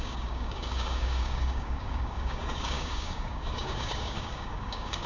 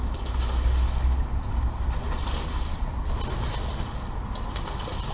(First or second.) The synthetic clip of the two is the first